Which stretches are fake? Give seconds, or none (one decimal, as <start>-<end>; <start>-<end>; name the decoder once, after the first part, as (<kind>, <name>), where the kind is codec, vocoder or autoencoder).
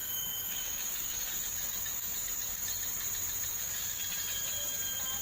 0.0-2.6 (codec, DAC); 3.5-4.0